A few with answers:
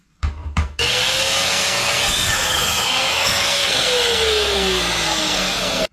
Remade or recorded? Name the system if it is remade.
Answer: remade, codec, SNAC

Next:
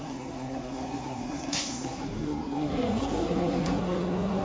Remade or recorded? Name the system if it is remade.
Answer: remade, codec, SNAC